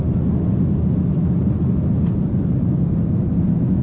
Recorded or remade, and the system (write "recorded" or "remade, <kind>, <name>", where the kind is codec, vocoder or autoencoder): recorded